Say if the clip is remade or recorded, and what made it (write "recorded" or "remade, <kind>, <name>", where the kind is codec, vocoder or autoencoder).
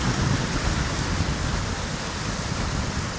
recorded